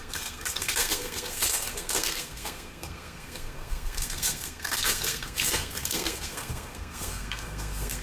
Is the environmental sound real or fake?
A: fake